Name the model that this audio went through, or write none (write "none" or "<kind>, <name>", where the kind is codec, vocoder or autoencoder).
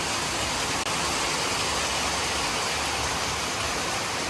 none